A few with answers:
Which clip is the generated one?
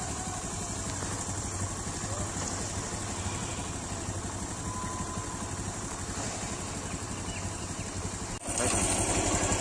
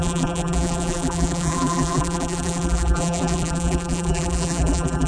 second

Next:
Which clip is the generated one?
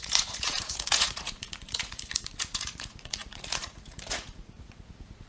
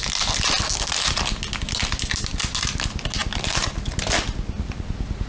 first